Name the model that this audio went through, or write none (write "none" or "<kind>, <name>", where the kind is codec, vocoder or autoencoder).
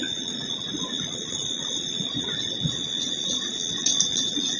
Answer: vocoder, Vocos